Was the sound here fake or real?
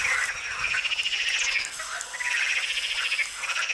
real